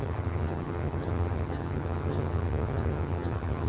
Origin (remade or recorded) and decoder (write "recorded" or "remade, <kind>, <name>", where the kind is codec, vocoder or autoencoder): remade, vocoder, HiFi-GAN